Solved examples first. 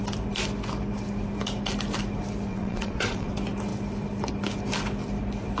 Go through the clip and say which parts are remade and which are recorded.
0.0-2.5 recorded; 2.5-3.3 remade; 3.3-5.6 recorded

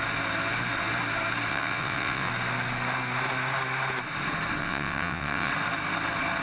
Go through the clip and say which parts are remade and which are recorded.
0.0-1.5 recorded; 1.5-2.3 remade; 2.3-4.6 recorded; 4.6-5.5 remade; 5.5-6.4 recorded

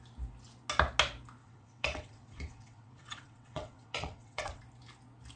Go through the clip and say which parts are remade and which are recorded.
0.0-1.4 recorded; 1.4-4.6 remade; 4.6-5.4 recorded

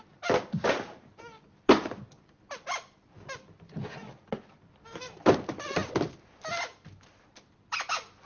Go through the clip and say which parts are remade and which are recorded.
0.0-8.3 recorded